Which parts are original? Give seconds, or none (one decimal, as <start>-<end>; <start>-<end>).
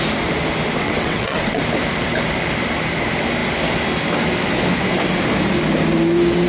0.0-0.8; 1.6-6.5